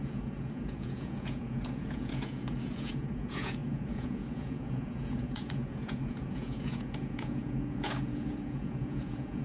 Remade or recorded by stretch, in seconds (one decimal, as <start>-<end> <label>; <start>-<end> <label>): 0.0-9.4 remade